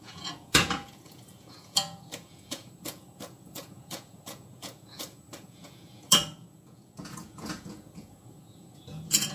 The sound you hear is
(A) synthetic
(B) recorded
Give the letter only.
A